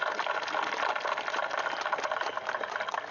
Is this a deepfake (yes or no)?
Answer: no